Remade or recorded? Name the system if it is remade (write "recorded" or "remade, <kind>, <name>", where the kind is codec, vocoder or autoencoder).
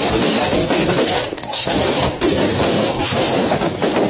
remade, codec, DAC